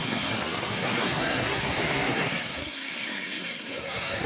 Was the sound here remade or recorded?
remade